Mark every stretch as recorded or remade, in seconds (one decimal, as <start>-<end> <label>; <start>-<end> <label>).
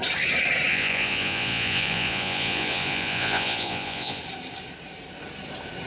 0.0-0.7 recorded; 0.7-4.2 remade; 4.2-5.9 recorded